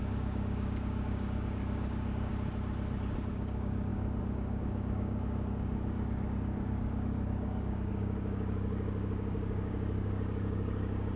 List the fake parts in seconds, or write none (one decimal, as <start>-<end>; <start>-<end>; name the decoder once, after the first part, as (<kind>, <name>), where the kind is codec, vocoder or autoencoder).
0.0-2.3 (codec, DAC); 3.3-11.2